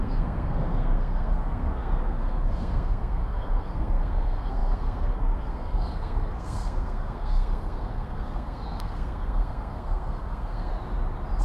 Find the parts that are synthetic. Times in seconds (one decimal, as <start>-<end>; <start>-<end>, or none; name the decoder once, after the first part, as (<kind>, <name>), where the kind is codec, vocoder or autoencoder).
0.0-10.7 (codec, SNAC)